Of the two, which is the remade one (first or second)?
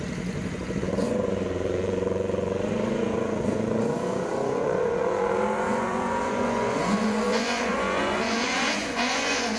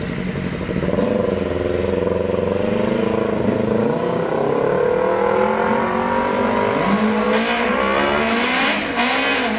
first